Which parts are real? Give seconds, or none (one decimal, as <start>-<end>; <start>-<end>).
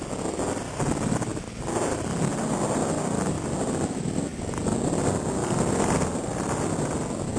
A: 0.0-7.4